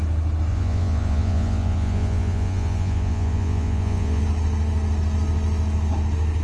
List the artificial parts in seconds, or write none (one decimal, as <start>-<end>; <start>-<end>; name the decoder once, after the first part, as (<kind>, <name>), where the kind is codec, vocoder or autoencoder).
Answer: 0.5-4.2 (vocoder, Vocos)